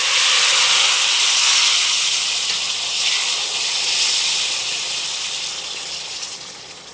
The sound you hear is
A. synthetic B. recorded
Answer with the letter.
B